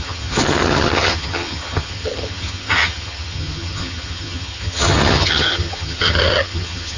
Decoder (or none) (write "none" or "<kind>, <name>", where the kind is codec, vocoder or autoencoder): vocoder, HiFi-GAN